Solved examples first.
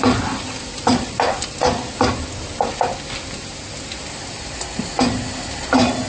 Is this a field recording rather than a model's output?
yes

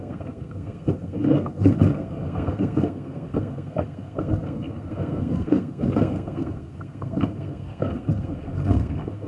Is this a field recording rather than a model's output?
no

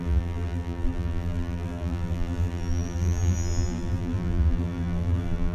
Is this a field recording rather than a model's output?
no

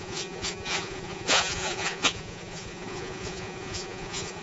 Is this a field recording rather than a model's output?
no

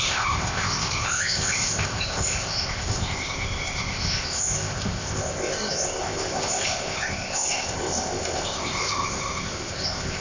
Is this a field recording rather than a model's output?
no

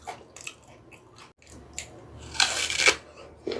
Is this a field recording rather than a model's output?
yes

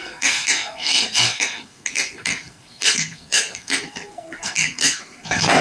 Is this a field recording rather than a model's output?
no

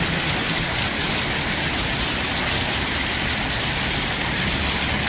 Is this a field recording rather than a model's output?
yes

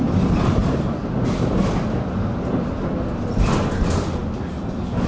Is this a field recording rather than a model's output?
yes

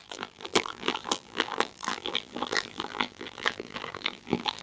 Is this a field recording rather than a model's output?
no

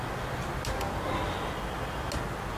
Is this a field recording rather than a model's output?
yes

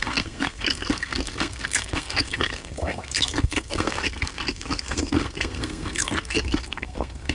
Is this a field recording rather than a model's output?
no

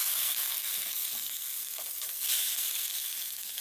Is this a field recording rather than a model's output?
no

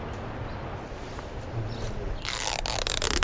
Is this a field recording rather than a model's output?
yes